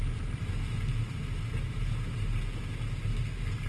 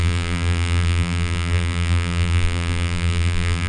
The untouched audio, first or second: first